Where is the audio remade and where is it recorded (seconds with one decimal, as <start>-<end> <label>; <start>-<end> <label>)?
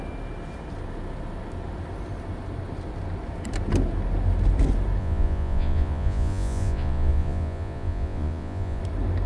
0.0-5.0 recorded; 5.0-8.8 remade; 8.8-9.3 recorded